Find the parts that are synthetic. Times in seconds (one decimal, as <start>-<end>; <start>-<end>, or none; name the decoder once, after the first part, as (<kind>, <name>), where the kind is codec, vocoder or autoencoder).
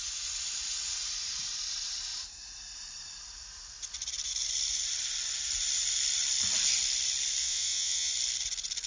7.4-8.1 (vocoder, Vocos)